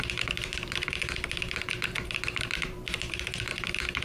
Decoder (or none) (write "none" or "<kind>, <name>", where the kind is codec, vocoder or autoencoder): vocoder, BigVGAN v2